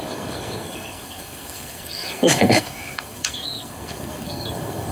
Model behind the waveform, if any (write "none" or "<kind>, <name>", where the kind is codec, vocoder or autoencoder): codec, SNAC